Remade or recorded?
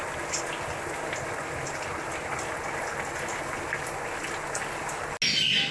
recorded